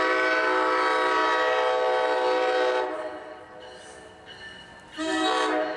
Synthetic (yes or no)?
no